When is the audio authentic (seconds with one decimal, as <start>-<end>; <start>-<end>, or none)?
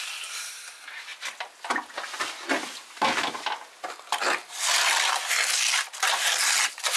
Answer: 0.0-7.0